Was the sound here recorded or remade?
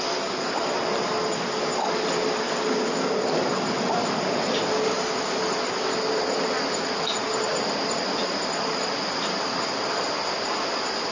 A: recorded